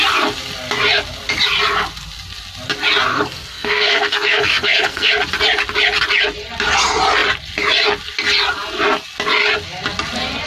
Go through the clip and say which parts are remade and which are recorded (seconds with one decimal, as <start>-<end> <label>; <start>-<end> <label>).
0.0-3.1 recorded; 3.1-5.1 remade; 5.1-10.5 recorded